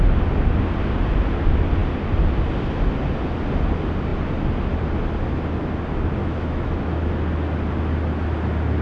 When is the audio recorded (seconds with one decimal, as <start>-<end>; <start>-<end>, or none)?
0.0-6.2; 6.8-8.8